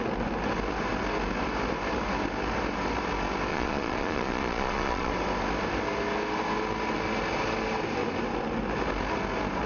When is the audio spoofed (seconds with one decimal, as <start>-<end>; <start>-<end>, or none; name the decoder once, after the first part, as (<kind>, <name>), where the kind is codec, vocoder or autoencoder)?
3.5-5.1 (vocoder, Vocos)